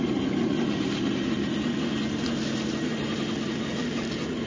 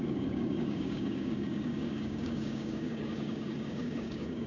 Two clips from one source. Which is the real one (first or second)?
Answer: first